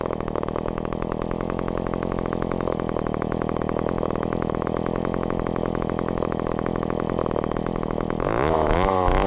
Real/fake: fake